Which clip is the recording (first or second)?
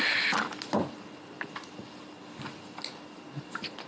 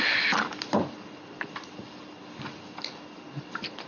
first